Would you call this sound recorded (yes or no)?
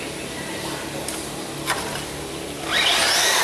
yes